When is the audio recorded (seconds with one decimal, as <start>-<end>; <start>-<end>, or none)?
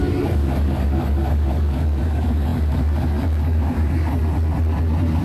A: 4.2-5.2